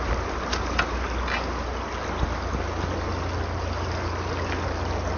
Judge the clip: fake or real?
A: real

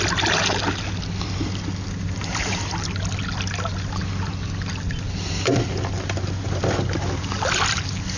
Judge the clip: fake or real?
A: real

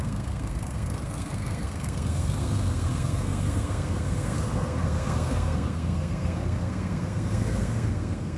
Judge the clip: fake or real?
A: fake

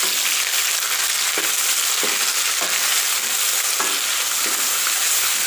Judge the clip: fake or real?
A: real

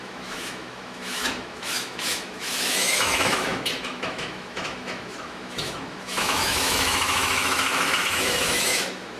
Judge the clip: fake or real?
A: fake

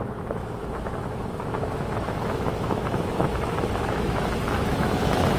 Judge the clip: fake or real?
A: fake